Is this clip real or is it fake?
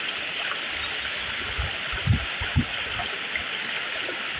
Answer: real